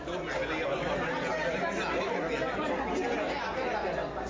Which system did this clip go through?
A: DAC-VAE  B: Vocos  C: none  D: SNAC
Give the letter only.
C